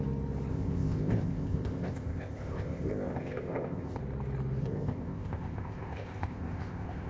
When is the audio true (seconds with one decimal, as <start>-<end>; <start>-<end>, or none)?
0.0-0.5; 4.0-4.6